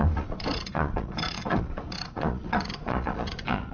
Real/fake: fake